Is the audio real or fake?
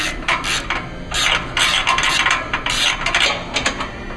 real